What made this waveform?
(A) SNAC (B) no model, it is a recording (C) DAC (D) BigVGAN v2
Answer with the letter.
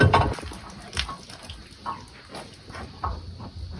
B